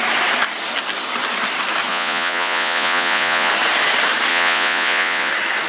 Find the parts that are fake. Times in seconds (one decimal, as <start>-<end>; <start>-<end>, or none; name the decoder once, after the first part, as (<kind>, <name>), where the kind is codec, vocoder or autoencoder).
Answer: 1.9-3.5 (vocoder, Vocos); 4.3-5.3

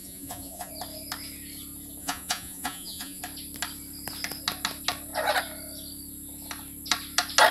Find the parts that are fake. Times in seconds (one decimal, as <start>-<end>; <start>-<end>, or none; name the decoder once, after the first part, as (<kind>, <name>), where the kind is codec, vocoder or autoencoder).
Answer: 0.0-0.7 (vocoder, Vocos); 2.0-3.2